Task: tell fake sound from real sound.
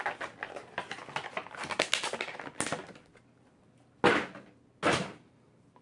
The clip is real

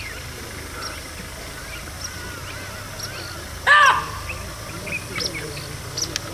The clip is real